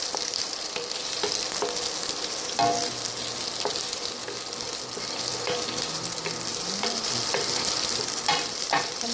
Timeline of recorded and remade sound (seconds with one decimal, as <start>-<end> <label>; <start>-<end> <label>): 0.0-1.0 remade; 1.0-3.8 recorded; 3.8-9.1 remade